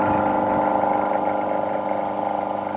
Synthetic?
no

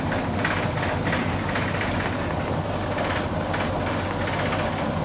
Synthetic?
no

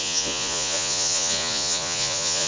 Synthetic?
yes